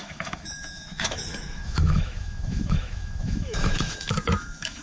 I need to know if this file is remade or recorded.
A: remade